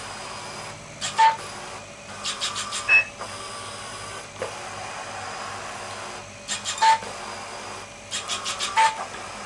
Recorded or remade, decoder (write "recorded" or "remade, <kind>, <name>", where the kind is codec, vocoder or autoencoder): recorded